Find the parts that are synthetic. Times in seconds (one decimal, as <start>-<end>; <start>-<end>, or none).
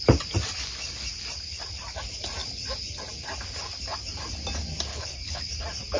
4.9-5.4